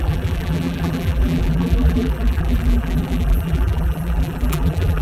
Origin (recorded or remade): remade